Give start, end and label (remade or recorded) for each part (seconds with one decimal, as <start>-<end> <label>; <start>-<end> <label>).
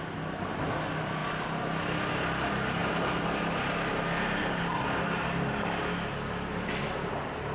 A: 0.0-7.5 recorded